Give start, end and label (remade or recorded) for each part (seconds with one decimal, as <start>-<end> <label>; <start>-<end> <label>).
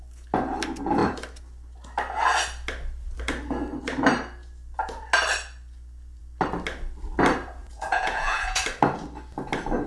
0.0-7.6 recorded; 7.6-8.6 remade; 8.6-9.9 recorded